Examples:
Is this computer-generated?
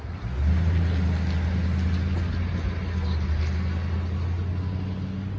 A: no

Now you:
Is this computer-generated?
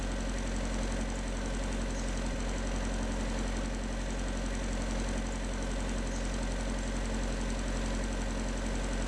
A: no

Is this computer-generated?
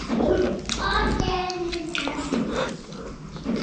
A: no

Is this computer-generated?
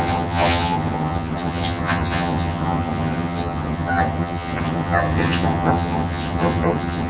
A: yes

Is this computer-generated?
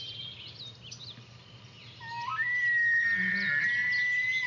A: no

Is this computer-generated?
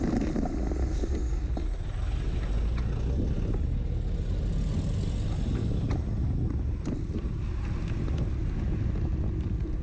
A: no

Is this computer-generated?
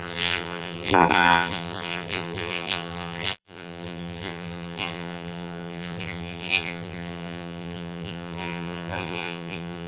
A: yes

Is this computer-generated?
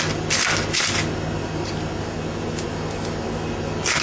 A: no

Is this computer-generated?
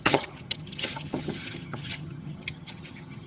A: yes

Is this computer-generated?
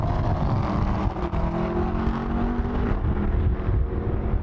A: no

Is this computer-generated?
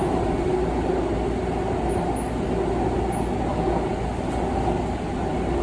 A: no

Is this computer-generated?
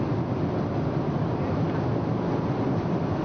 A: no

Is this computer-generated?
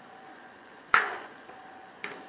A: yes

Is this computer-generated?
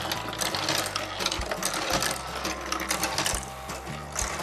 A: no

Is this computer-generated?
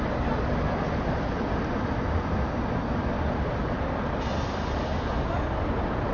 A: no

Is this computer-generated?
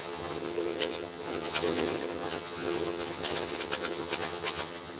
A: yes